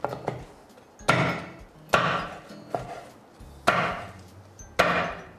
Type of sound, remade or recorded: recorded